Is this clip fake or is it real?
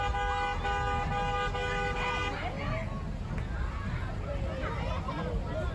real